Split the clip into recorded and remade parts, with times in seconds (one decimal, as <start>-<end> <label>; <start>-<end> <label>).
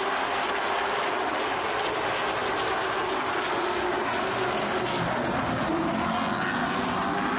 0.0-7.4 recorded